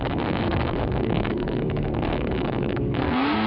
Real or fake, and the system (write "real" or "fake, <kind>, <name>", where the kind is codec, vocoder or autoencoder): fake, codec, SNAC